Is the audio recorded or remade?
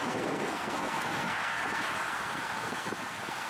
remade